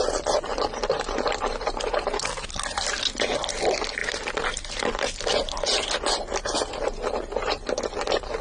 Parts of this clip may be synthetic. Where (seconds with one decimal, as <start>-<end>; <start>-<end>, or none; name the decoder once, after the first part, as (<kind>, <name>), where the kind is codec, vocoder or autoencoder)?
0.5-1.9 (vocoder, BigVGAN v2); 4.0-7.8